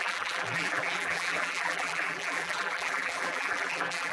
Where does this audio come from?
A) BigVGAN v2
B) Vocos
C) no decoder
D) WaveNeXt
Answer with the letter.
A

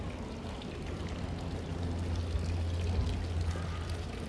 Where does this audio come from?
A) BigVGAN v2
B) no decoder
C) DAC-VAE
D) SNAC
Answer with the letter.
B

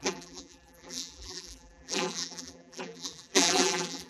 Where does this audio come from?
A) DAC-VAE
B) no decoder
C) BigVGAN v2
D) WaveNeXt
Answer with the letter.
C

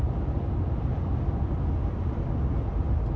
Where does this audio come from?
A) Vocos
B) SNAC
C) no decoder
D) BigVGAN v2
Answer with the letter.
C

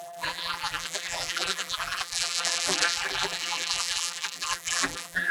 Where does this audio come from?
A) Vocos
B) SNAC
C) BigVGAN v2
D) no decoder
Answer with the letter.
C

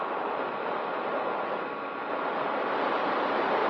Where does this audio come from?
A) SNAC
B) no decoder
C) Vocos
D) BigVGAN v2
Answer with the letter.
B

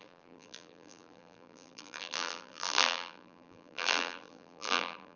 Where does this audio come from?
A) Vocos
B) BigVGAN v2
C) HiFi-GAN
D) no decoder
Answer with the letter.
B